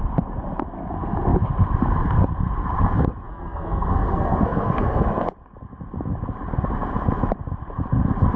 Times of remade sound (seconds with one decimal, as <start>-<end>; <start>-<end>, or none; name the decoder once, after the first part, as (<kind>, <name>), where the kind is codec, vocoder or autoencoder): 3.3-5.0 (codec, SNAC)